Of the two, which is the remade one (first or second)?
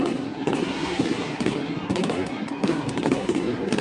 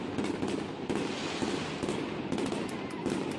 first